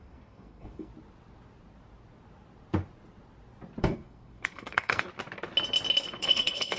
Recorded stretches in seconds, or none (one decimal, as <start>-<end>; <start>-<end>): 0.9-3.8; 5.1-6.2